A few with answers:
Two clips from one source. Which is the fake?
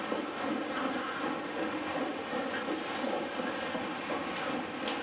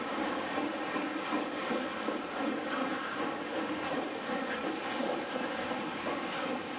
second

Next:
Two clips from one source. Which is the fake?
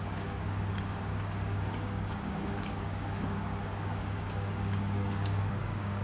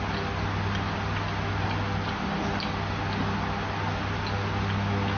first